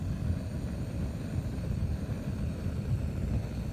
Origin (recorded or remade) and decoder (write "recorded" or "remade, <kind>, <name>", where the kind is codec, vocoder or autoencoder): recorded